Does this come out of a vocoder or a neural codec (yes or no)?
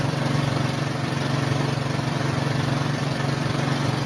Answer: yes